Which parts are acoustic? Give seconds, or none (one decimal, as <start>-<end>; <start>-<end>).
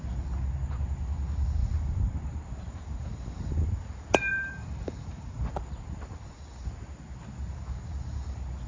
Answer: 0.0-1.6; 3.7-4.3; 5.5-8.7